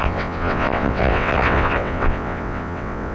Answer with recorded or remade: remade